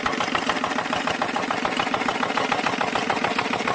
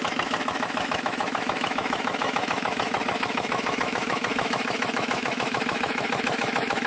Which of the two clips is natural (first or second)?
first